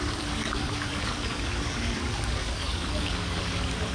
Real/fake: fake